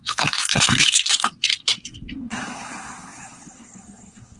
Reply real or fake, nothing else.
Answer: fake